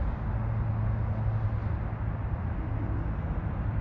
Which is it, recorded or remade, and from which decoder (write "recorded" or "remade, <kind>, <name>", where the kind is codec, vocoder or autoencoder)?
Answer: recorded